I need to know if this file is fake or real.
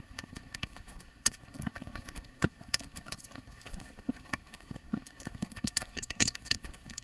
fake